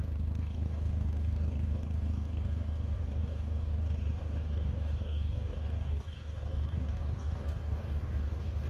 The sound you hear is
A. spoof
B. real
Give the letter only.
A